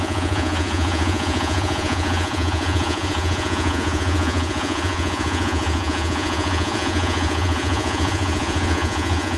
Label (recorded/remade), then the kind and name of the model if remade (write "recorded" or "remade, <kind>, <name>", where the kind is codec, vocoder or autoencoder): remade, vocoder, Vocos